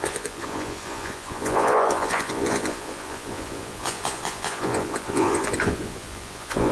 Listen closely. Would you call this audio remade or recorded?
remade